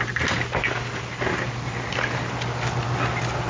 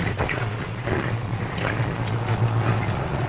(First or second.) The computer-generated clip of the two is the second